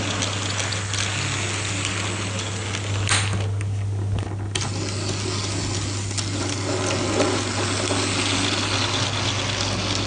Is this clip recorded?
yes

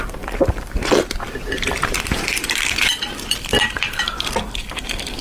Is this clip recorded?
no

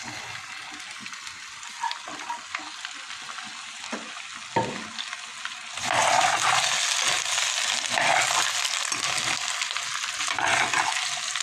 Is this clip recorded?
yes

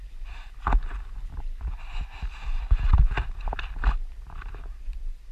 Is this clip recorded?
yes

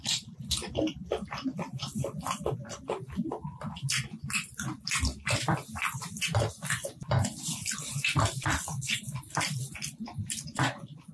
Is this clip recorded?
no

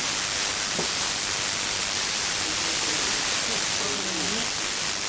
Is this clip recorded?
yes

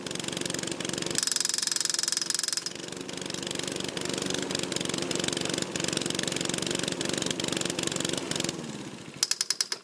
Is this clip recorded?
yes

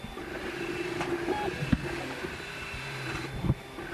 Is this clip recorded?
no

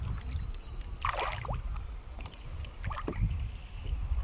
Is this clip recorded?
yes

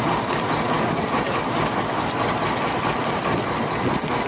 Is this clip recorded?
yes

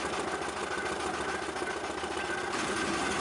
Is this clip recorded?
yes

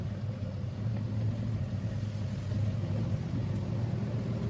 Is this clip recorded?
yes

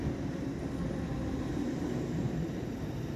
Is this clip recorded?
no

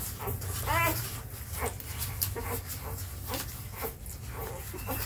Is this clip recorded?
yes